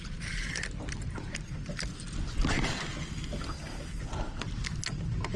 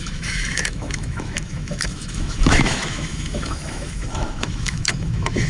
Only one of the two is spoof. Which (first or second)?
second